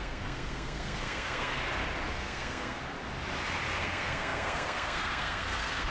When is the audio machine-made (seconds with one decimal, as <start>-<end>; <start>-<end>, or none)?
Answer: 0.0-1.6; 2.1-2.8; 3.8-5.9